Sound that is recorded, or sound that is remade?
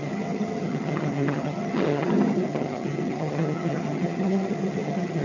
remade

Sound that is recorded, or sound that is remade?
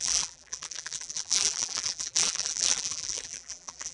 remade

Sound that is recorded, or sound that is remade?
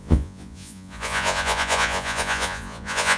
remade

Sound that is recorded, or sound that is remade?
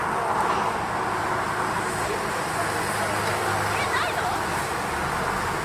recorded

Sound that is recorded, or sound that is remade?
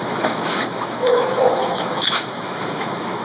remade